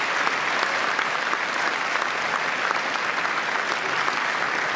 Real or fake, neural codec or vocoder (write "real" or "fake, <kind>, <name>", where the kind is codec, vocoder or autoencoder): real